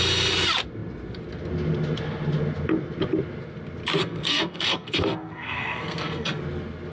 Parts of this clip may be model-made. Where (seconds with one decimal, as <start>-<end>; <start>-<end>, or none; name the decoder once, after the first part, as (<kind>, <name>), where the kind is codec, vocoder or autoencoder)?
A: 4.0-6.4 (codec, SNAC)